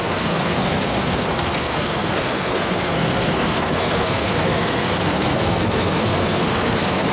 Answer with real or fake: fake